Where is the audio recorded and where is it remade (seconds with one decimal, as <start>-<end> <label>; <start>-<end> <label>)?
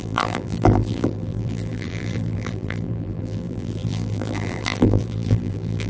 0.0-5.9 remade